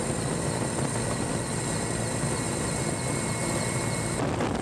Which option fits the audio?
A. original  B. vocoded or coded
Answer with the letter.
A